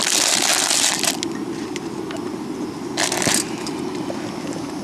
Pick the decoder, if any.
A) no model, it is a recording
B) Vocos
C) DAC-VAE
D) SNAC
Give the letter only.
A